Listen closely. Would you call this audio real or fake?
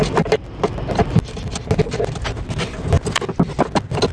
real